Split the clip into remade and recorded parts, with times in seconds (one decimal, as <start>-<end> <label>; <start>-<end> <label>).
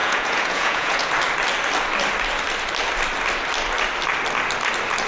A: 0.0-1.1 remade; 1.1-5.1 recorded